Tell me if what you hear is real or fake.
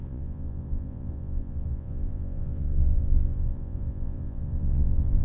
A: fake